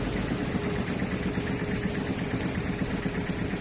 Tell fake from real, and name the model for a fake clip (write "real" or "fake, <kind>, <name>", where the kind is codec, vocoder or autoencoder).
real